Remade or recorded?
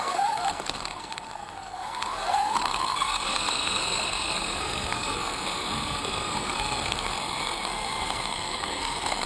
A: remade